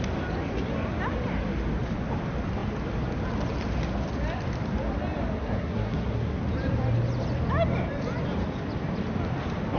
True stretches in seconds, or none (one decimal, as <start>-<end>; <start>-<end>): 0.0-5.4; 6.4-9.8